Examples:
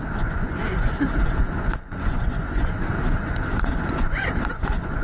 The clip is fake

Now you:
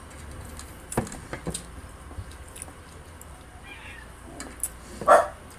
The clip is real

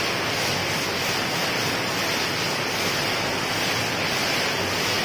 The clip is real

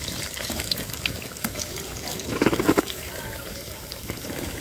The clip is fake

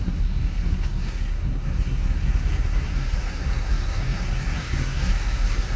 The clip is fake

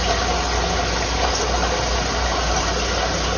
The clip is real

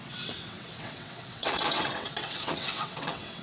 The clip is fake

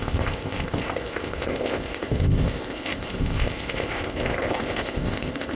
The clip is fake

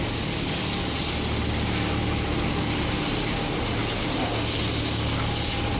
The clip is real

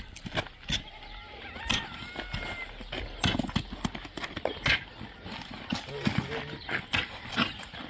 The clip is real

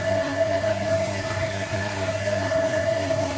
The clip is fake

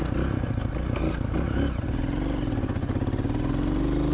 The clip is real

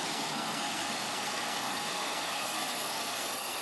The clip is fake